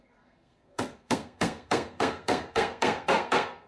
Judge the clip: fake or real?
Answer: fake